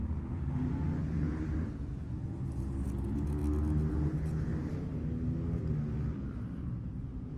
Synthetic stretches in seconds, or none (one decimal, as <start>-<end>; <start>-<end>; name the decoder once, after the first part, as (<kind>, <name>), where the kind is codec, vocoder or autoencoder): 0.0-3.4 (vocoder, Vocos); 3.9-4.5; 6.6-7.4